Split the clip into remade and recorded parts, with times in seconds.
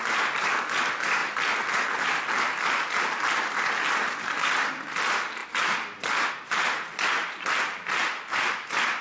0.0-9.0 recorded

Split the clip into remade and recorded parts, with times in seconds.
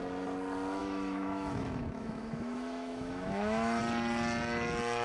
0.0-0.8 recorded; 0.8-3.8 remade; 3.8-5.0 recorded